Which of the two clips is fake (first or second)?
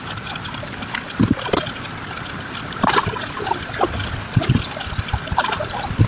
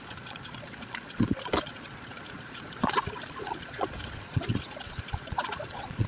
second